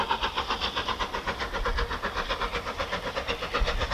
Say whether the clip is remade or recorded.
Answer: recorded